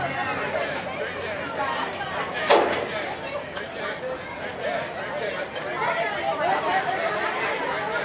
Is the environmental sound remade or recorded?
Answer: recorded